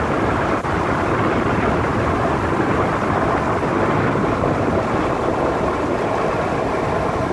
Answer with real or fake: real